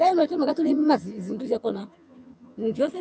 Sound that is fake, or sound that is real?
fake